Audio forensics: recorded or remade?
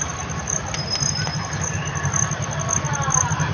recorded